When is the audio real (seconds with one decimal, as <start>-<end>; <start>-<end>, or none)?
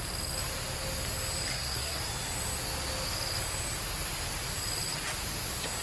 0.0-1.5; 2.0-5.8